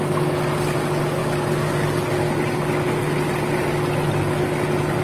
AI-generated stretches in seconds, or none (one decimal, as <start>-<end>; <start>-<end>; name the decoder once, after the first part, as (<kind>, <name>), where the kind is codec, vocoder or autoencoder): none